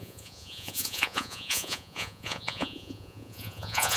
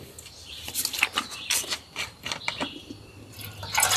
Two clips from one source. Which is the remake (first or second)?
first